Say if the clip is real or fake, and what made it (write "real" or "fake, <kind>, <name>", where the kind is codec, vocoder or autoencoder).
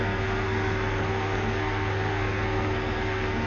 fake, codec, SNAC